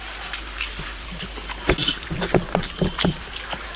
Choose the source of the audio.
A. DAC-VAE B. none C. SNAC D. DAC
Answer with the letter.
B